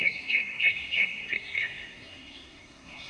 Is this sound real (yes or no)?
no